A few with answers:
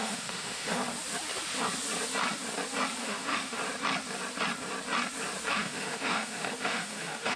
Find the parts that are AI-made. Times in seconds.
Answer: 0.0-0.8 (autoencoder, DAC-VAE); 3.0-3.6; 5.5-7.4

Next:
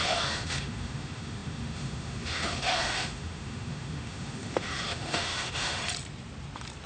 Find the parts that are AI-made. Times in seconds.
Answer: 0.0-5.8 (autoencoder, DAC-VAE)

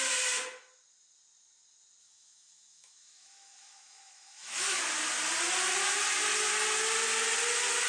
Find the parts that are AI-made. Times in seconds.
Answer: 2.0-4.8 (autoencoder, DAC-VAE)

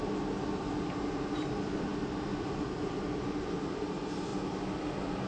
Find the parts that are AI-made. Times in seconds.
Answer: none

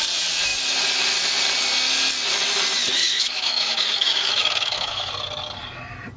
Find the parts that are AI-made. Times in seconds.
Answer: 3.0-5.1 (autoencoder, DAC-VAE)